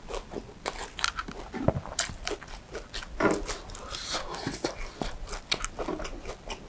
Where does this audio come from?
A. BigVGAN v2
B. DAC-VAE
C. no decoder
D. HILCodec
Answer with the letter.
C